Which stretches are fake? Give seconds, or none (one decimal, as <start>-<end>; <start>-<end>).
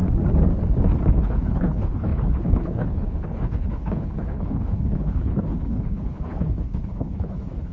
1.1-7.7